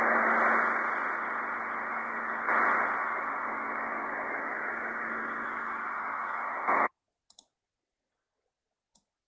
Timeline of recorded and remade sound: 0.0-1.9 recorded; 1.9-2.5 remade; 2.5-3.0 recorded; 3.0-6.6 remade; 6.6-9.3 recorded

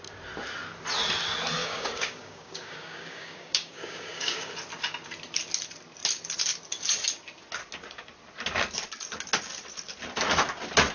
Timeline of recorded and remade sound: 0.0-1.6 recorded; 1.6-4.5 remade; 4.5-10.9 recorded

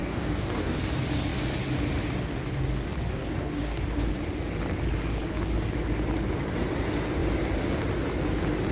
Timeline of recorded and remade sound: 0.0-0.8 remade; 0.8-3.1 recorded; 3.1-4.1 remade; 4.1-8.7 recorded

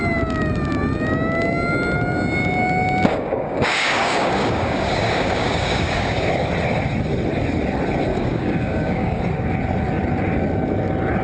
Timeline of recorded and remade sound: 0.0-3.1 recorded; 3.1-6.3 remade; 6.3-8.1 recorded; 8.1-9.2 remade; 9.2-11.2 recorded